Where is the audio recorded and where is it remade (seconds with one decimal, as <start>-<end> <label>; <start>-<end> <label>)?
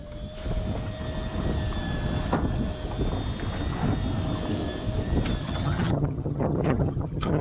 0.0-5.4 recorded; 5.4-7.4 remade